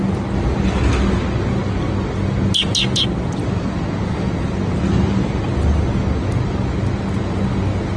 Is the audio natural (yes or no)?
yes